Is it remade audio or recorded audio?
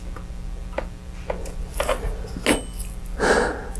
recorded